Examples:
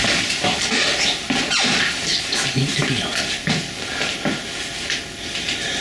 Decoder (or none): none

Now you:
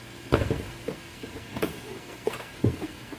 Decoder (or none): codec, SNAC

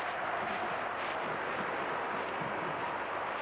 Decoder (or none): none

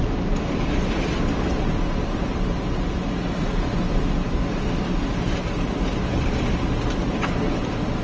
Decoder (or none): none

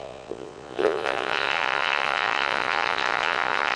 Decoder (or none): vocoder, Vocos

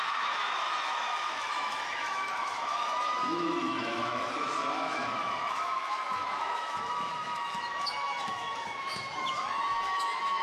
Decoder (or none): autoencoder, DAC-VAE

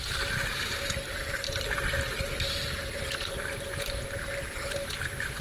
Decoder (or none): vocoder, BigVGAN v2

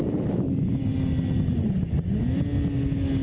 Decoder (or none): none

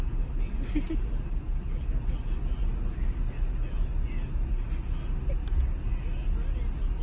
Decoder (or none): none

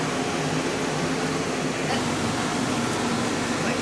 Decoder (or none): none